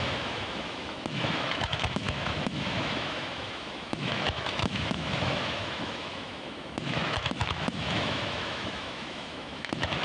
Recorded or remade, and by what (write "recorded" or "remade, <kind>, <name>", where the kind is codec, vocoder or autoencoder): remade, autoencoder, DAC-VAE